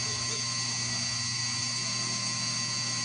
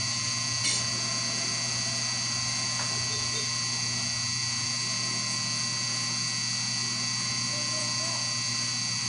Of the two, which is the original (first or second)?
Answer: second